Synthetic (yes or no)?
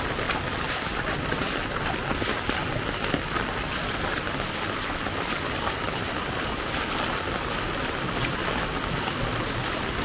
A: no